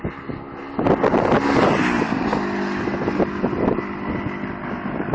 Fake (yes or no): no